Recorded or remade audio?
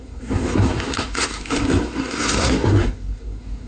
remade